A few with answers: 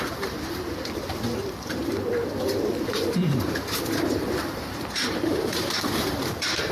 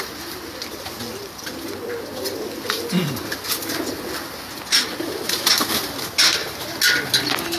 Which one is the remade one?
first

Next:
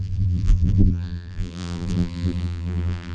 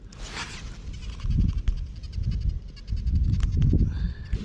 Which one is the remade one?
first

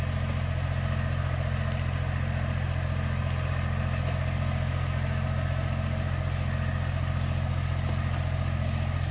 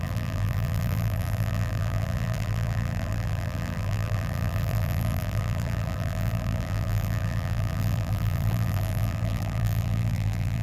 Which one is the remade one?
second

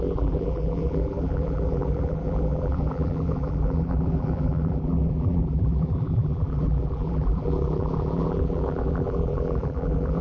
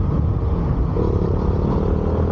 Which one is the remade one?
first